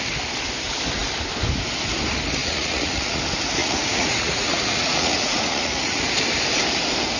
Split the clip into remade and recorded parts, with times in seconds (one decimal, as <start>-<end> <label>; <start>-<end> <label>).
0.0-2.4 recorded; 2.4-3.2 remade; 3.2-3.6 recorded; 3.6-6.0 remade; 6.0-7.2 recorded